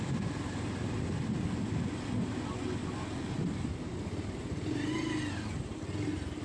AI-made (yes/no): no